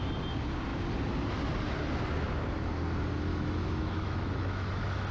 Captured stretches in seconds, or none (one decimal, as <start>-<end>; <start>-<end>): 0.0-3.3